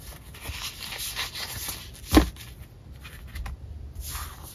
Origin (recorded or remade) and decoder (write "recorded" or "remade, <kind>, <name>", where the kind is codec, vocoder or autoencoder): recorded